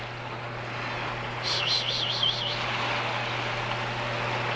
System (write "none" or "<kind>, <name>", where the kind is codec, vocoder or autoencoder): none